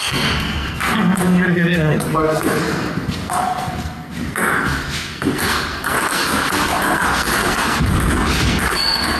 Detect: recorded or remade remade